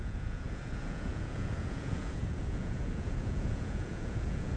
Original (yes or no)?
no